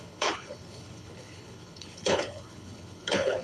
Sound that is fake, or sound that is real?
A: fake